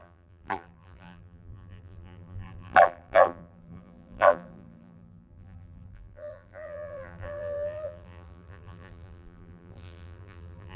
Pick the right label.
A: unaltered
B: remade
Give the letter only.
B